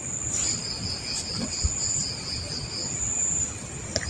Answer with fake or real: real